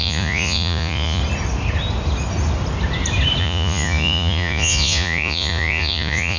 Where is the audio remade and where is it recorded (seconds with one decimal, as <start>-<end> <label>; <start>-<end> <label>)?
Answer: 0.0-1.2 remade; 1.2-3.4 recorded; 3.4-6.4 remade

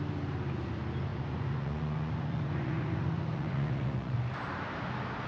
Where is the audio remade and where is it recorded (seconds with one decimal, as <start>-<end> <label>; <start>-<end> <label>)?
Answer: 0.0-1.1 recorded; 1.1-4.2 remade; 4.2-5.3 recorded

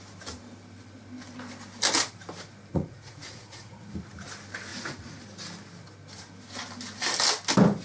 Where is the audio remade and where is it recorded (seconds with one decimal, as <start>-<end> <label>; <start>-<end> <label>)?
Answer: 0.0-2.7 recorded; 2.7-3.9 remade; 3.9-4.7 recorded; 4.7-5.2 remade; 5.2-7.8 recorded

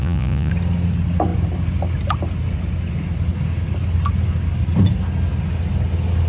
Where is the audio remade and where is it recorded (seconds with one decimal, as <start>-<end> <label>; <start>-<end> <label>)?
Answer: 0.0-0.5 remade; 0.5-6.3 recorded

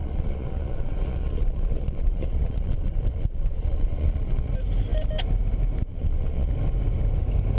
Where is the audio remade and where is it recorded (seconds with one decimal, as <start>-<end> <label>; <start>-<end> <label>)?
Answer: 0.0-4.5 remade; 4.5-5.9 recorded; 5.9-6.5 remade; 6.5-7.6 recorded

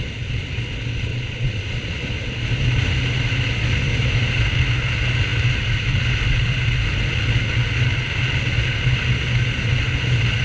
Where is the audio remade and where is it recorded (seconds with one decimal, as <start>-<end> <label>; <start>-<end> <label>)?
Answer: 0.0-1.1 recorded; 1.1-2.0 remade; 2.0-10.4 recorded

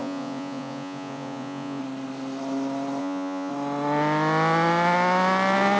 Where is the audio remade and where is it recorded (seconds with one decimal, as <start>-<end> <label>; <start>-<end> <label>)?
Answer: 0.0-1.8 remade; 1.8-3.0 recorded; 3.0-3.5 remade; 3.5-5.8 recorded

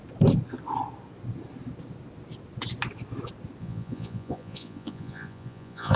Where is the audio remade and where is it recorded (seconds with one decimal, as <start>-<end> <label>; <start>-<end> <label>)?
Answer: 0.0-3.6 recorded; 3.6-6.0 remade